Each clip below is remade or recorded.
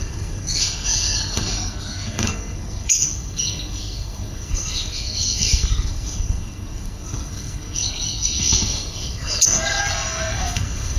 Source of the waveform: remade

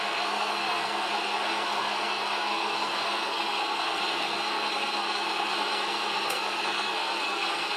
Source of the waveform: remade